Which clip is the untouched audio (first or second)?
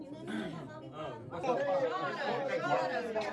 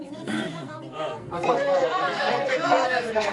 first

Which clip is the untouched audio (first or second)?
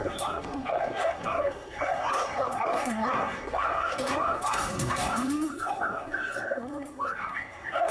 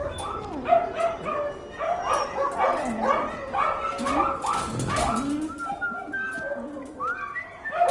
second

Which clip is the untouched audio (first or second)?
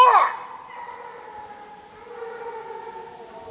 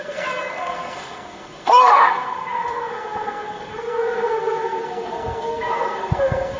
first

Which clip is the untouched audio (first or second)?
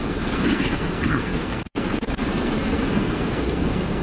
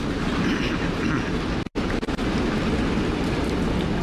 second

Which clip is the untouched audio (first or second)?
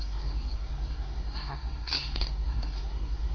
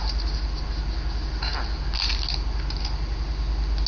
second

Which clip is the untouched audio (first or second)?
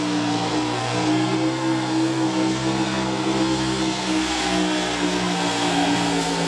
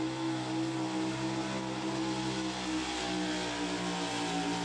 second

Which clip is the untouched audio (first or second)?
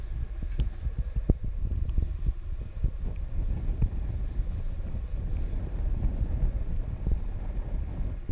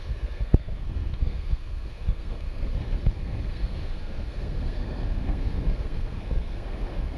first